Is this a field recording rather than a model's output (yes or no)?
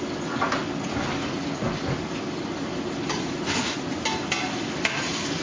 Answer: yes